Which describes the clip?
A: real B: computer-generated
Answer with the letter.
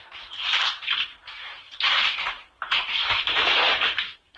A